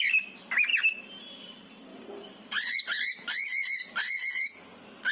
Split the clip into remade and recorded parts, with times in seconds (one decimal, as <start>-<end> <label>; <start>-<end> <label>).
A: 0.0-1.9 recorded; 1.9-4.3 remade; 4.3-5.1 recorded